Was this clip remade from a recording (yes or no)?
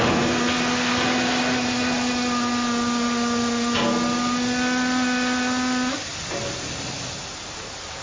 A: no